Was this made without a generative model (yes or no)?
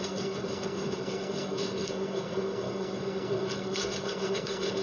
no